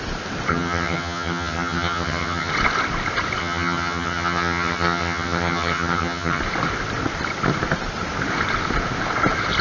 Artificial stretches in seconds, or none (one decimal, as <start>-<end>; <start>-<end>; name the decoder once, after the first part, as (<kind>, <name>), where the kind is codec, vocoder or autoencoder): 0.5-2.5 (vocoder, HiFi-GAN); 3.4-6.4

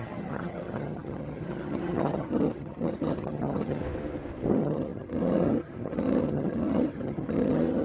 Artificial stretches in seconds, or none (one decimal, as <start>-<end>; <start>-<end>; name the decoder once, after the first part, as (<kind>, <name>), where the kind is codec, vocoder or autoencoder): 0.0-3.8 (vocoder, HiFi-GAN); 4.5-7.8

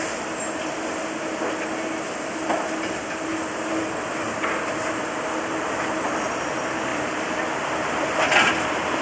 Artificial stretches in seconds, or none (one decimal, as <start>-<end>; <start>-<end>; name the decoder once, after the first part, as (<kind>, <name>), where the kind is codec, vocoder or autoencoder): none

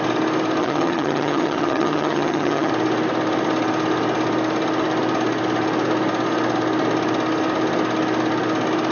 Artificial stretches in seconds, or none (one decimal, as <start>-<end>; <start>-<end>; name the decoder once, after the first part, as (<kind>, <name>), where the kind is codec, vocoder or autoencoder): 0.6-2.7 (vocoder, HiFi-GAN)

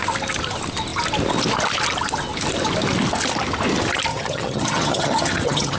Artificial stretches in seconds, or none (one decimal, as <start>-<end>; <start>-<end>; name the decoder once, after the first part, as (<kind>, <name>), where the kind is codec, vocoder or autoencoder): 4.1-5.8 (vocoder, HiFi-GAN)

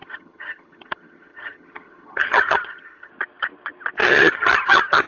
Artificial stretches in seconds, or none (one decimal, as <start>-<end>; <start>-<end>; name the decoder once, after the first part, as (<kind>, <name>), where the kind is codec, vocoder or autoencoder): 0.0-3.1 (vocoder, HiFi-GAN); 4.0-5.1

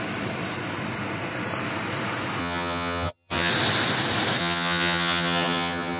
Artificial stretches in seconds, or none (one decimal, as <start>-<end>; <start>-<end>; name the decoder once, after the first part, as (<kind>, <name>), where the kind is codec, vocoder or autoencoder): 2.4-3.5 (vocoder, HiFi-GAN); 4.4-6.0

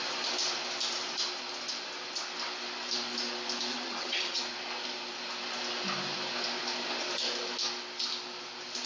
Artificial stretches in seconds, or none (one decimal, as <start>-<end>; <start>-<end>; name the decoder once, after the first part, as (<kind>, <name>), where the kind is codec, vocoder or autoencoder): 3.7-4.4 (vocoder, HiFi-GAN)